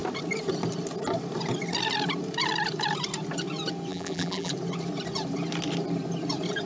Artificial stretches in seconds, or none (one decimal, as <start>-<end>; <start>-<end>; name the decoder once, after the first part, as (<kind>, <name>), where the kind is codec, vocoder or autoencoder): 3.9-4.5 (vocoder, BigVGAN v2)